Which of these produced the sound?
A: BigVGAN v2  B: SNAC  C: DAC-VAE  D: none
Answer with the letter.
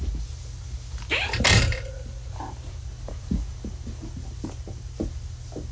D